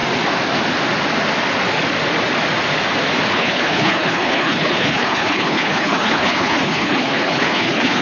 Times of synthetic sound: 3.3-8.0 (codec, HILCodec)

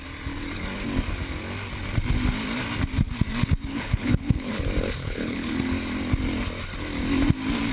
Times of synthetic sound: 3.7-4.6 (codec, HILCodec); 5.0-5.5

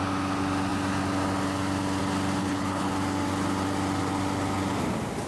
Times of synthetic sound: 2.4-2.9 (codec, HILCodec)